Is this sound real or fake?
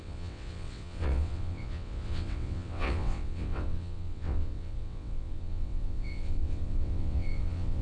fake